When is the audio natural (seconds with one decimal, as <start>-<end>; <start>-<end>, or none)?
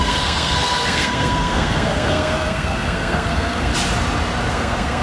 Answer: 3.7-4.5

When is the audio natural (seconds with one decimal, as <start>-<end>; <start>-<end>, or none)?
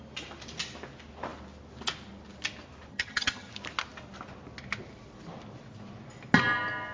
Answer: 0.0-2.9; 3.5-6.9